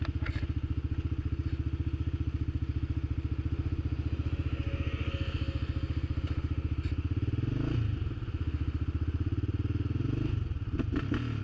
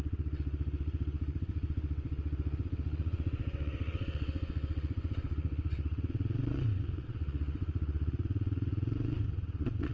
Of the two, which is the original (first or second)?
first